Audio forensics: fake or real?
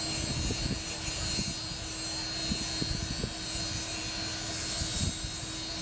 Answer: real